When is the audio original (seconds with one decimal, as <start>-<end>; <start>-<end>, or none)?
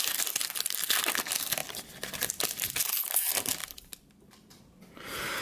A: 0.0-3.6; 4.5-5.4